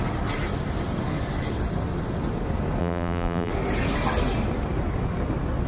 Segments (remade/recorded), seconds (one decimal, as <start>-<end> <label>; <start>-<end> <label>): 0.0-2.8 recorded; 2.8-3.5 remade; 3.5-5.7 recorded